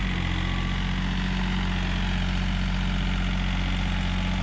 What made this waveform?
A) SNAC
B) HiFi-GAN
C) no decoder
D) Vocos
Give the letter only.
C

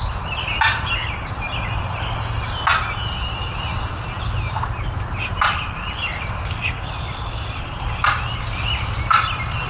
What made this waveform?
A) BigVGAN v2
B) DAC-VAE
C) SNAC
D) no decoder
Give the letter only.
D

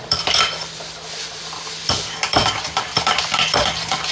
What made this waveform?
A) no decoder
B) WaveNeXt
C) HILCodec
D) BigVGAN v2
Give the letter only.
D